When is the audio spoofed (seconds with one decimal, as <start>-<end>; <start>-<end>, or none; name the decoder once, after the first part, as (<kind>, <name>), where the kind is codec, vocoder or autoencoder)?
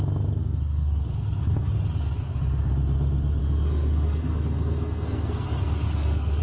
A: 0.4-1.7 (codec, SNAC); 3.4-6.4